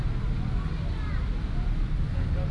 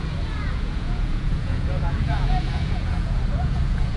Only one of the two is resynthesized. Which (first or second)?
second